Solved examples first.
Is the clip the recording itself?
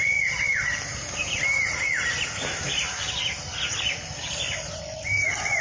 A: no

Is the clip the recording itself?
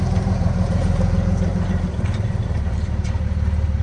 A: no